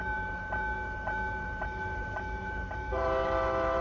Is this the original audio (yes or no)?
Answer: no